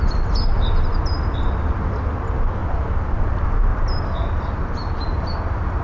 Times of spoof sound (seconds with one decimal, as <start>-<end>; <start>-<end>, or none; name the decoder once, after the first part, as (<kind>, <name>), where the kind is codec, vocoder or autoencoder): 3.7-5.8 (vocoder, BigVGAN v2)